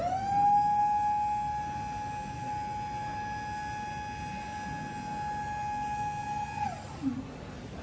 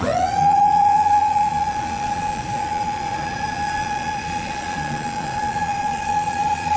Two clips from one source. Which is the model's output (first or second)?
second